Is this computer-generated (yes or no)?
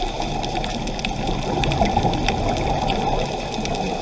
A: no